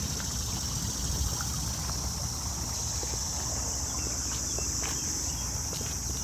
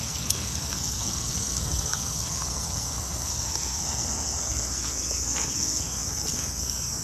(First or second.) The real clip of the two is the first